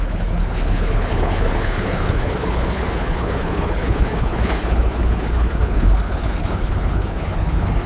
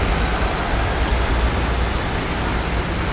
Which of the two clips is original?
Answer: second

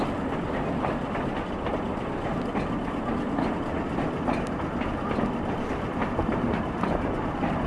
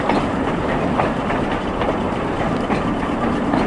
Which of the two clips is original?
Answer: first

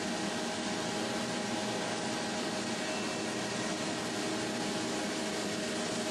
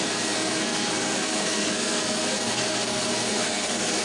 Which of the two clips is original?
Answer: first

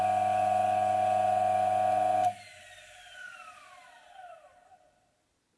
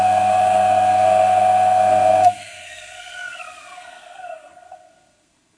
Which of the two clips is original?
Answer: first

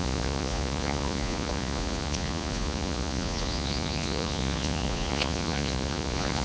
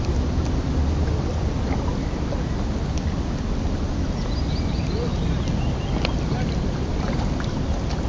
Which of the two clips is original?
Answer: second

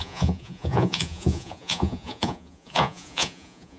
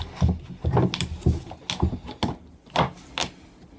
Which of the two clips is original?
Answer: second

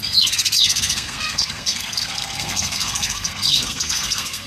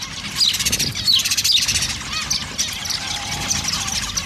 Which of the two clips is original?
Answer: second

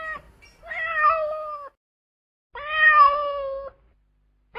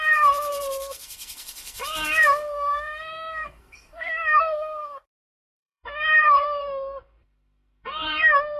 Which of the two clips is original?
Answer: first